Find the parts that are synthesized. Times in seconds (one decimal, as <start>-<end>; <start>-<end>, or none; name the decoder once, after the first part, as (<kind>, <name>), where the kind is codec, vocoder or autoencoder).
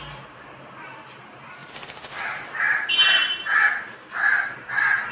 none